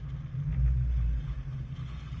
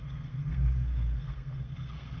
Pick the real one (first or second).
first